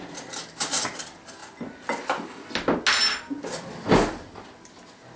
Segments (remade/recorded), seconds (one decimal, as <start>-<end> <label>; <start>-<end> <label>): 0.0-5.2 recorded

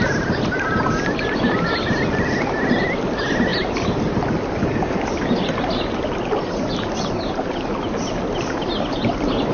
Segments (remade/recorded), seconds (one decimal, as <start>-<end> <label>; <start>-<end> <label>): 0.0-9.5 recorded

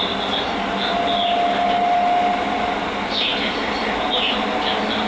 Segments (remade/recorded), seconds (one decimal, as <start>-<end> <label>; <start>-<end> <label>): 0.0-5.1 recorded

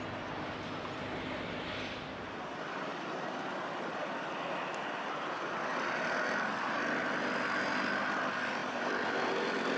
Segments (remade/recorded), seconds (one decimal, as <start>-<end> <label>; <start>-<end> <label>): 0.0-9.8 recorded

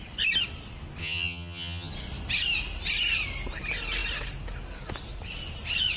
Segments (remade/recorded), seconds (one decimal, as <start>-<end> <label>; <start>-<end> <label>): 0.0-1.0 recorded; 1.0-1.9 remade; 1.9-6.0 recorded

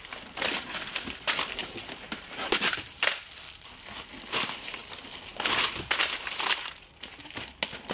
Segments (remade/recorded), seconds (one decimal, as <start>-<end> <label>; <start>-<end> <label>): 0.0-7.9 recorded

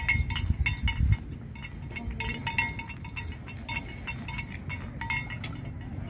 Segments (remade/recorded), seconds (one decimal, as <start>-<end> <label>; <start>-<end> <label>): 0.0-6.1 recorded

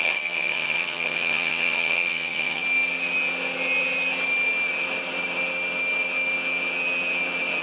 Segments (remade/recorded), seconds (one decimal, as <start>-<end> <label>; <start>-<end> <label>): 0.0-2.6 remade; 2.6-7.6 recorded